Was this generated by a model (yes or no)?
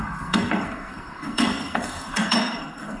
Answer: yes